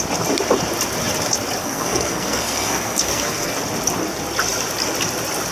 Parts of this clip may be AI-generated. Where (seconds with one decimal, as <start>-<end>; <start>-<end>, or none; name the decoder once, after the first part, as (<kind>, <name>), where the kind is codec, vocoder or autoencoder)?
1.6-3.5 (codec, SNAC)